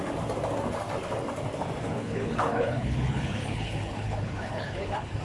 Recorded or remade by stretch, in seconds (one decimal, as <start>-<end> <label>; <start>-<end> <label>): 0.0-2.0 recorded; 2.0-5.2 remade